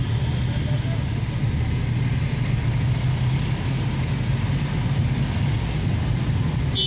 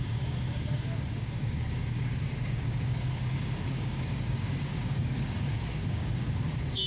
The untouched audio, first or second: first